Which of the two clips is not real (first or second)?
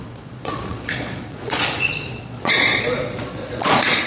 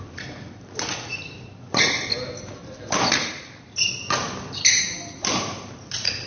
first